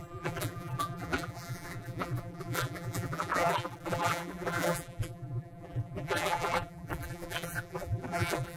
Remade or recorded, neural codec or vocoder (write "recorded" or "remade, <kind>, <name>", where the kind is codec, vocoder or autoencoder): remade, vocoder, BigVGAN v2